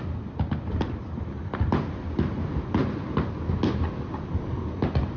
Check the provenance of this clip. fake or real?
real